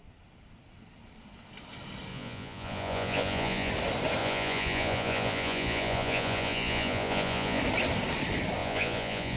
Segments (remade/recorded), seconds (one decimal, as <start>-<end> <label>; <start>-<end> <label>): 0.0-2.1 recorded; 2.1-3.7 remade; 3.7-4.2 recorded; 4.2-7.6 remade; 7.6-8.6 recorded; 8.6-9.4 remade